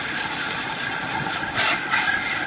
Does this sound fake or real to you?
real